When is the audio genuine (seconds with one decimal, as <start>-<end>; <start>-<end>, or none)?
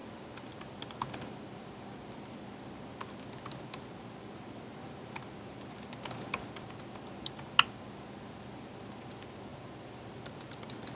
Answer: 0.0-10.9